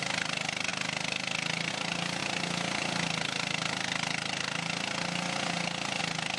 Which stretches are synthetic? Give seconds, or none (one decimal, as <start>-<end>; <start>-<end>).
none